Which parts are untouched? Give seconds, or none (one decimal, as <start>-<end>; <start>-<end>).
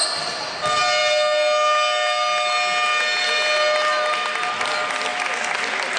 0.0-6.0